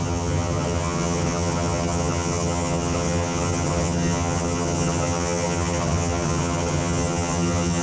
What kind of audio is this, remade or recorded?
remade